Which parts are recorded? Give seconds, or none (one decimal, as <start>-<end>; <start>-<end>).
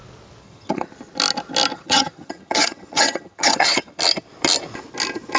0.0-0.4; 0.9-1.7; 4.0-5.4